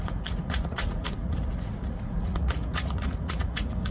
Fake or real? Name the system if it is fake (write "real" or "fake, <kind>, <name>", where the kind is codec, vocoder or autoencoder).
fake, vocoder, Vocos